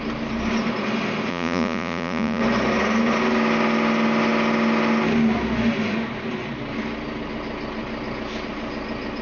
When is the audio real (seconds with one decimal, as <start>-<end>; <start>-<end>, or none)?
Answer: 0.0-1.3; 2.4-9.2